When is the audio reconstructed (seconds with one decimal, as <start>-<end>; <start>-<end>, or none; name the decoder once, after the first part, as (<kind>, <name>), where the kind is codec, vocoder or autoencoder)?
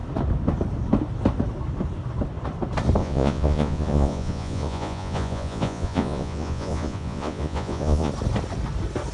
3.0-8.1 (vocoder, Vocos)